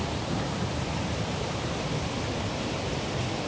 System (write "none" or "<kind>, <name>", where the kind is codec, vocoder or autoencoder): vocoder, BigVGAN v2